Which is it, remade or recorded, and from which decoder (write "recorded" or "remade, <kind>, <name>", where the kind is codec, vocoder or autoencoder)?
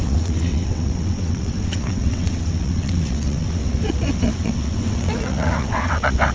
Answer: remade, vocoder, WaveNeXt